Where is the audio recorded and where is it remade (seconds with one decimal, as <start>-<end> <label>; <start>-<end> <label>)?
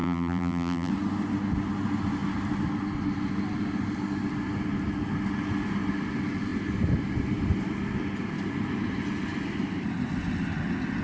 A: 0.0-0.9 remade; 0.9-11.0 recorded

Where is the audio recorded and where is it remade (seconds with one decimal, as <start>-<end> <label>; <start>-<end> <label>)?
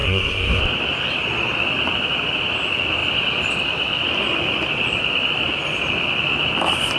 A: 0.0-0.6 remade; 0.6-7.0 recorded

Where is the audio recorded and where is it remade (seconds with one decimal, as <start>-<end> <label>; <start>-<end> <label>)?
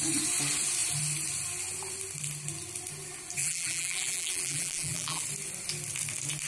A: 0.0-3.4 recorded; 3.4-5.2 remade; 5.2-6.5 recorded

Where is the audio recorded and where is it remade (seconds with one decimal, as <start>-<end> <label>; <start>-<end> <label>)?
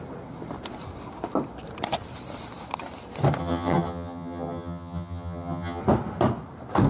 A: 0.0-3.4 recorded; 3.4-5.8 remade; 5.8-6.9 recorded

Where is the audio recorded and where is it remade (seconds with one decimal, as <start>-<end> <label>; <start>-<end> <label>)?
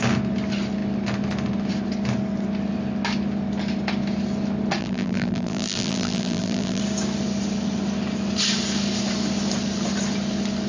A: 0.0-4.8 recorded; 4.8-6.8 remade; 6.8-10.7 recorded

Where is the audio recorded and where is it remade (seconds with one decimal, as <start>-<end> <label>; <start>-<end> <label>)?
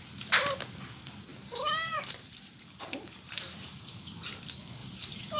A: 0.0-1.3 recorded; 1.3-4.1 remade; 4.1-4.8 recorded; 4.8-5.4 remade